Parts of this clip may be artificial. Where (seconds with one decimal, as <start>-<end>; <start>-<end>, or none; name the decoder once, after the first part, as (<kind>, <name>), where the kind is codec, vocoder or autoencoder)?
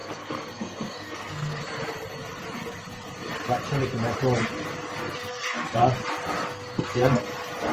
0.0-1.6 (codec, SNAC); 5.0-5.8; 6.4-7.2